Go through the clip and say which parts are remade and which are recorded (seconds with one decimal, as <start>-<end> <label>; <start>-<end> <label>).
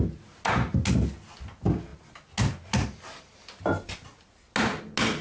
0.0-5.2 recorded